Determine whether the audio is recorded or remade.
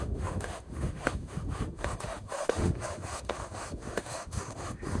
remade